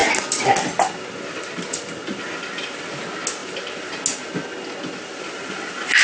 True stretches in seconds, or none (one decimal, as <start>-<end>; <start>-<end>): 0.0-6.0